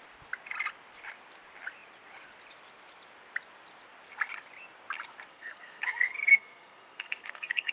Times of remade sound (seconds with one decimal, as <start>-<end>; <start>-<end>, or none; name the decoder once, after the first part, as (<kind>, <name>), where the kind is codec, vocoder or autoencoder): 5.3-7.7 (codec, SNAC)